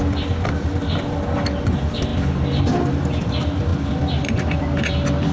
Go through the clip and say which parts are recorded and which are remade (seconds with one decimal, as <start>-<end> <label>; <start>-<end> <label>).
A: 0.0-5.3 recorded